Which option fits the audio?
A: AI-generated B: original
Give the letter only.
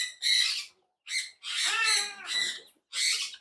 B